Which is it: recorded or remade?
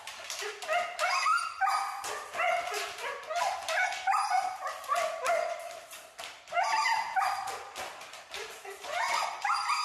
remade